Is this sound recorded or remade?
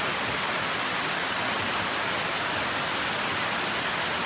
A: recorded